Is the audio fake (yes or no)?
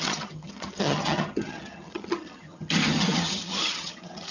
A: yes